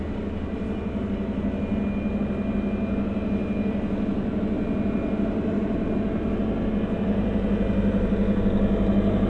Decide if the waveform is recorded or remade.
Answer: recorded